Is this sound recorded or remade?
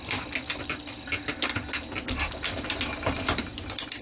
recorded